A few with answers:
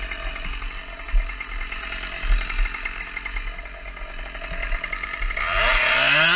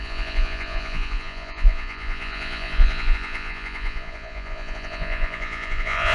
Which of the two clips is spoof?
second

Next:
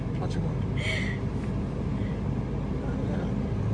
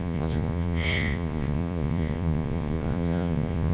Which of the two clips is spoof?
second